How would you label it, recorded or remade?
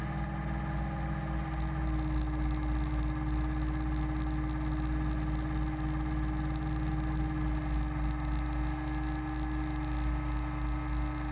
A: recorded